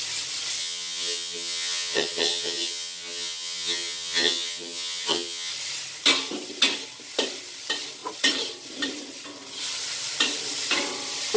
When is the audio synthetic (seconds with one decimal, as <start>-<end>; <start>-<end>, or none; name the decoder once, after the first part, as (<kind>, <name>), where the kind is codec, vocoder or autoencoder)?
0.6-5.5 (vocoder, HiFi-GAN)